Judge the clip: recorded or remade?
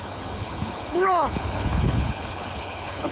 remade